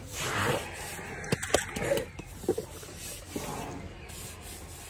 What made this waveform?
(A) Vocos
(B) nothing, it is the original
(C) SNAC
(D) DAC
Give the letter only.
B